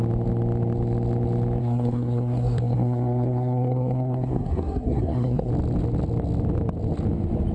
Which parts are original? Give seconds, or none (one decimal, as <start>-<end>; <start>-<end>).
0.0-1.6; 5.5-7.5